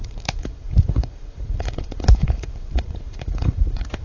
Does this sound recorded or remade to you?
remade